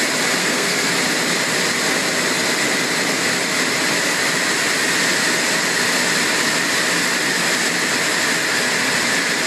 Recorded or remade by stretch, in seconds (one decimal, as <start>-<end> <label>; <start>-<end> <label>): 0.0-0.4 recorded; 0.4-0.9 remade; 0.9-9.5 recorded